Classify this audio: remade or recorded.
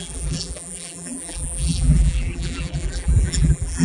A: remade